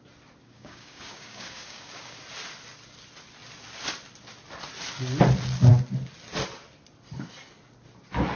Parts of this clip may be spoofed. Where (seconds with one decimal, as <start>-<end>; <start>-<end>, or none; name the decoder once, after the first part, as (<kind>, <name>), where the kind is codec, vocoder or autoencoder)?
0.4-2.2 (codec, DAC)